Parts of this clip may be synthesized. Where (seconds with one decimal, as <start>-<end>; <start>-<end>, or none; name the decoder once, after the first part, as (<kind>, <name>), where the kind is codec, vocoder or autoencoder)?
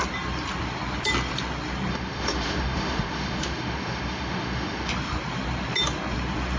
1.9-4.9 (autoencoder, DAC-VAE)